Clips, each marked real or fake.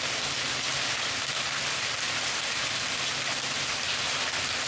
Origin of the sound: real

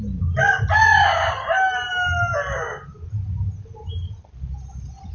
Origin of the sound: real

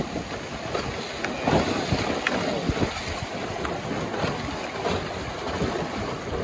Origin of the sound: real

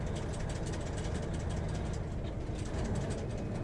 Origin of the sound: real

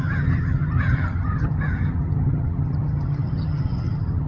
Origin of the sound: fake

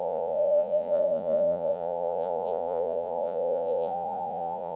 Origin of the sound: fake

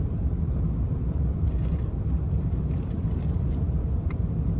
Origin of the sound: fake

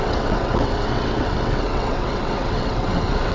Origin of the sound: fake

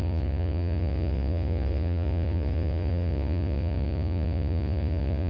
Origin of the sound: fake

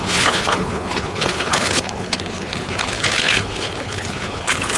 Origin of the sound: fake